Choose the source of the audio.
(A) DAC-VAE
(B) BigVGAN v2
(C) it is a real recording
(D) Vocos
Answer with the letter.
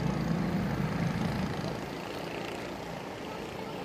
C